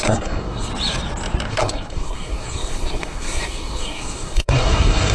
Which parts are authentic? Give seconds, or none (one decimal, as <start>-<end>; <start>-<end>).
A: 0.7-1.5